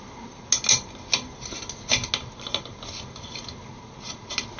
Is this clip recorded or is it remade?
recorded